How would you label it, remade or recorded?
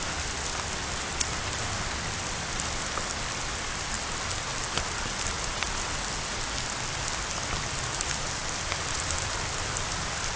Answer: recorded